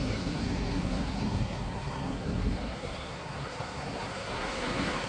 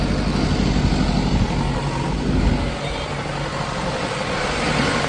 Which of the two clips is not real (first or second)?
first